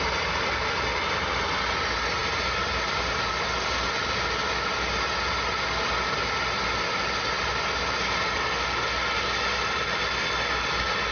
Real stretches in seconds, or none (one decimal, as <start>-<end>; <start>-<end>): 0.0-11.1